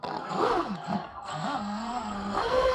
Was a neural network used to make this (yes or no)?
yes